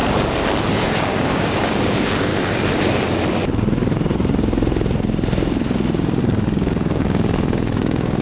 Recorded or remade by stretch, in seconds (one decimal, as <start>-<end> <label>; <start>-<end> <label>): 0.0-0.7 recorded; 0.7-2.3 remade; 2.3-6.2 recorded; 6.2-8.2 remade